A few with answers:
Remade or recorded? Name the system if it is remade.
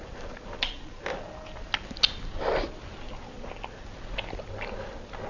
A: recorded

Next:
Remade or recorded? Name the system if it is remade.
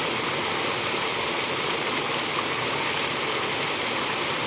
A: recorded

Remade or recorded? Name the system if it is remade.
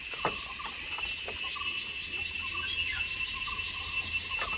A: recorded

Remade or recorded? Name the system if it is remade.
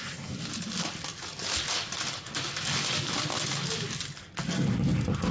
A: recorded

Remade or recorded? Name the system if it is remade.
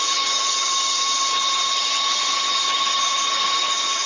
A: remade, vocoder, HiFi-GAN